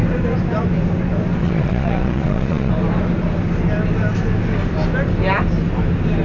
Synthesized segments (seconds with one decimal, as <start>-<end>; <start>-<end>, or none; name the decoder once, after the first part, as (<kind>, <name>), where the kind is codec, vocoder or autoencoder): 1.4-2.7 (vocoder, Vocos)